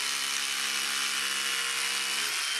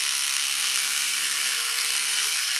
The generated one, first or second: second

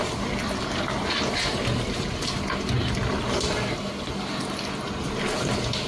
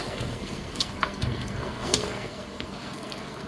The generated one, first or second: second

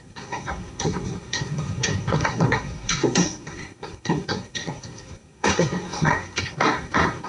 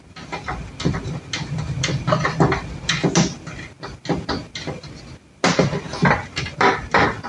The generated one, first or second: first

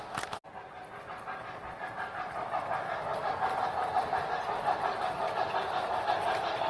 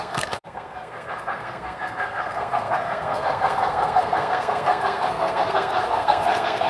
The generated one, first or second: second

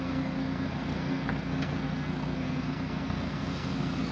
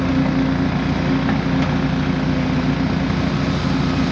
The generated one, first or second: first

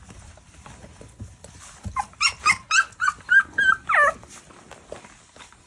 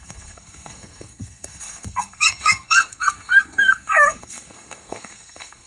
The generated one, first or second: second